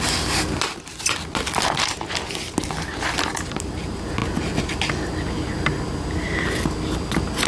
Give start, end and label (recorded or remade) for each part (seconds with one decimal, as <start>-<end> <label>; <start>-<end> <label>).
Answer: 0.0-7.5 recorded